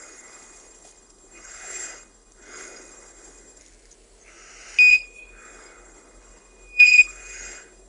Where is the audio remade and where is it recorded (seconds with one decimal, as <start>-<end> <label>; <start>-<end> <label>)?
0.0-3.6 remade; 3.6-4.9 recorded; 4.9-7.9 remade